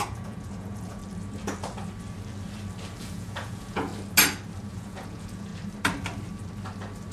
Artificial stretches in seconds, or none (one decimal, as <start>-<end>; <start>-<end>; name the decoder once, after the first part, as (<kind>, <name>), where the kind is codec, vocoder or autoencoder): 0.0-1.0 (vocoder, Vocos); 3.0-3.9; 4.7-5.5